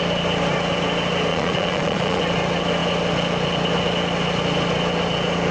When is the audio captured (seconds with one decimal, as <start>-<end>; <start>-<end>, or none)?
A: 0.0-1.3; 2.2-5.5